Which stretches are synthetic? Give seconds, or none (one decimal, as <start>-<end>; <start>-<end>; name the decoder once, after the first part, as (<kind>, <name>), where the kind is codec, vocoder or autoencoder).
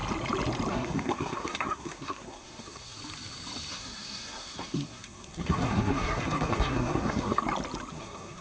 0.7-3.0 (codec, SNAC); 3.7-7.4; 7.9-8.4